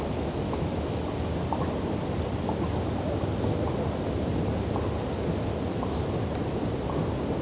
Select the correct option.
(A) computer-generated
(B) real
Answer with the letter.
B